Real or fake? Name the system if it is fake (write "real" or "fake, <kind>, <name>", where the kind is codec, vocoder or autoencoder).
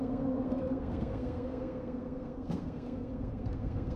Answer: fake, codec, SNAC